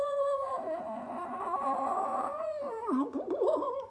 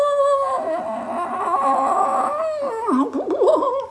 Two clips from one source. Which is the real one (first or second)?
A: second